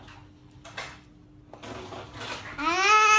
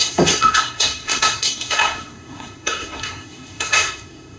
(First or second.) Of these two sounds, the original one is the first